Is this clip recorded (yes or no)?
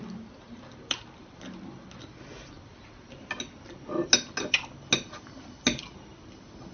yes